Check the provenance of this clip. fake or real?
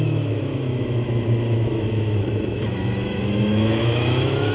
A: fake